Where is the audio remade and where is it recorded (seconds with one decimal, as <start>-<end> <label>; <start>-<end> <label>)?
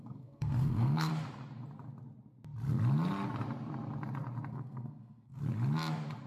0.0-1.1 remade; 1.1-4.5 recorded; 4.5-5.4 remade; 5.4-6.3 recorded